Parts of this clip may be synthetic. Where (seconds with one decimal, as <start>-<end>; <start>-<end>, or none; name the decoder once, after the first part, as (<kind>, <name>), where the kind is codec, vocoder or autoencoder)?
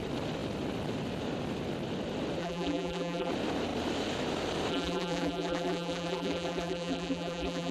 2.4-3.3 (vocoder, BigVGAN v2); 4.7-7.7